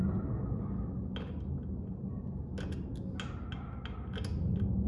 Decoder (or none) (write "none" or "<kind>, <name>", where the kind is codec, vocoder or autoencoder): none